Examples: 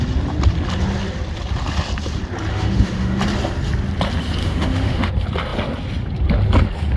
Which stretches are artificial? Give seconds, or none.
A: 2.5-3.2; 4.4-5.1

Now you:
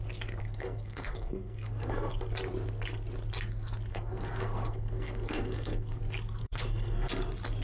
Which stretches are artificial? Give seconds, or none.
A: 0.4-2.1; 3.9-6.0; 6.4-7.1

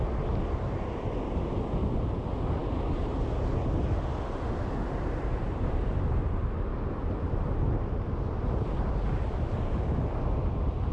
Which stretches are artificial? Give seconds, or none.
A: none